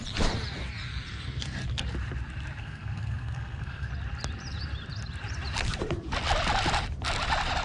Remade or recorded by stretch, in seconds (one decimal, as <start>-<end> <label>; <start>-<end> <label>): 0.0-2.6 recorded; 2.6-3.9 remade; 3.9-7.6 recorded